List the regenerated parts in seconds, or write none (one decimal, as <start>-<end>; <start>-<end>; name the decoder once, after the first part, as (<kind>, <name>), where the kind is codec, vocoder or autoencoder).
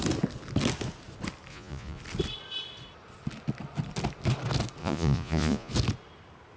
1.5-2.0 (vocoder, Vocos); 4.8-5.7